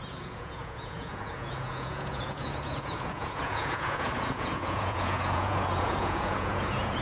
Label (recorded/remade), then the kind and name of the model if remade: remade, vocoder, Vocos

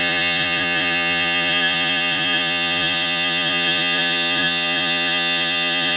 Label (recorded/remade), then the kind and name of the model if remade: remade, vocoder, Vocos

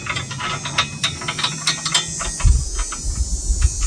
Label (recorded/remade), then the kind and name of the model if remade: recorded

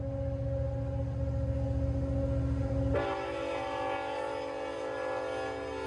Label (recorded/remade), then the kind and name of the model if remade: recorded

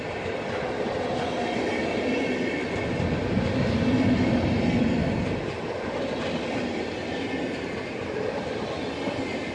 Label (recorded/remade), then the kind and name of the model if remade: recorded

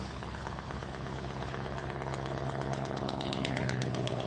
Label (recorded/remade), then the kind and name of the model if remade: remade, codec, HILCodec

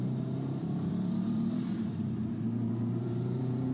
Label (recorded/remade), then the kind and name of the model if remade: remade, vocoder, BigVGAN v2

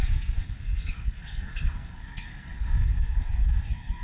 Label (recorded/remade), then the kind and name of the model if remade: remade, codec, SNAC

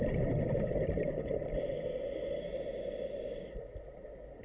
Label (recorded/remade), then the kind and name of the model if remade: recorded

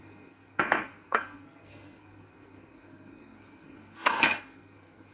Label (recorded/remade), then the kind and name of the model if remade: remade, codec, SNAC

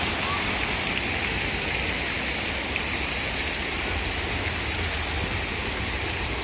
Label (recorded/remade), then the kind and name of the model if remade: recorded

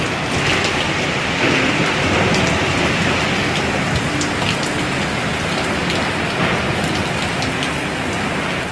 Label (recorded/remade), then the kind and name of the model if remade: recorded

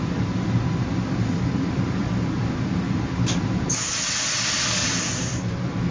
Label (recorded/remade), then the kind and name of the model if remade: remade, vocoder, BigVGAN v2